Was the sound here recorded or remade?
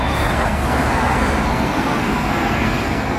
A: remade